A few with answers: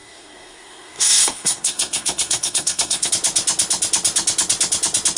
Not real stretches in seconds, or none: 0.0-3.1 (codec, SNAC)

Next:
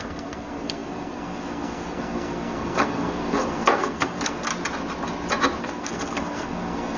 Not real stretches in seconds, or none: 0.0-4.5 (codec, SNAC); 5.6-7.0

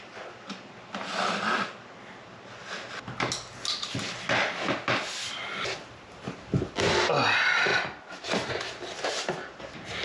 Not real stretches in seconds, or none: none

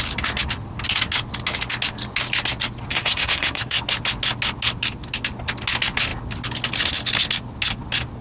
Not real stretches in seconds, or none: 2.9-3.8 (codec, SNAC)

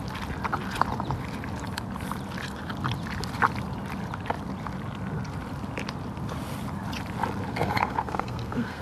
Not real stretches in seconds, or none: 7.5-8.8 (codec, SNAC)

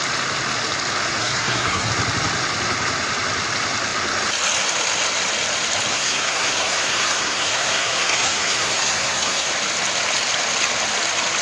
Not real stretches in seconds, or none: 1.2-1.9 (codec, SNAC); 5.9-9.5